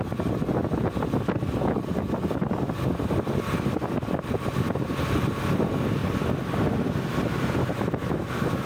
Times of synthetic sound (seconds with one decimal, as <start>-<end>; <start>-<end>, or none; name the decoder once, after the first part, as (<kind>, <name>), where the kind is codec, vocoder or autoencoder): 8.0-8.7 (autoencoder, DAC-VAE)